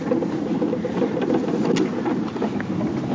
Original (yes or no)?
yes